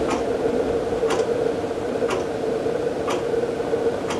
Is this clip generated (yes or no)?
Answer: no